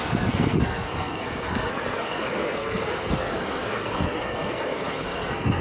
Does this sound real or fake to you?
fake